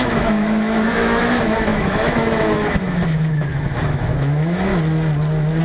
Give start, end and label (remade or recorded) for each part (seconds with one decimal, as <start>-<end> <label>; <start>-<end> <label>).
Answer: 0.0-4.7 remade; 4.7-5.6 recorded